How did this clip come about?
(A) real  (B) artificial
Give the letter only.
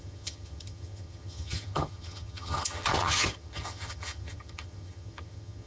B